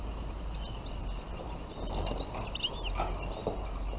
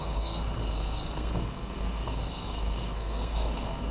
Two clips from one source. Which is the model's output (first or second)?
second